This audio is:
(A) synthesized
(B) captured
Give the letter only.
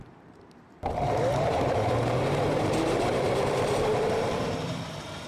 A